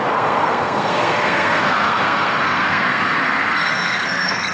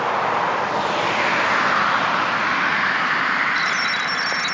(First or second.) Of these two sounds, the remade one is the first